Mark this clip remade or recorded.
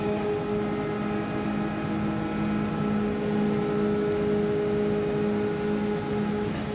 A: recorded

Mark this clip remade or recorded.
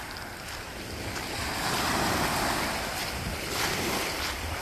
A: recorded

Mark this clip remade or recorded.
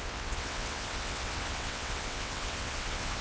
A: remade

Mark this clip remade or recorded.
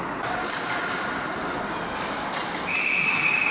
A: remade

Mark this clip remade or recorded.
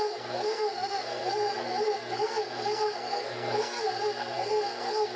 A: remade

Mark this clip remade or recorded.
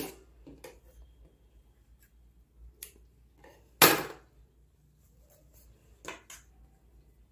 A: recorded